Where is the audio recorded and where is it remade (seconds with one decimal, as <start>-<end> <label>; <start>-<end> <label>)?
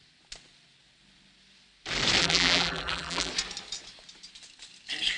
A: 0.0-2.2 recorded; 2.2-3.3 remade; 3.3-5.2 recorded